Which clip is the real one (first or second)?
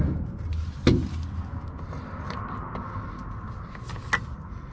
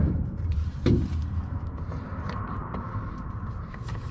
first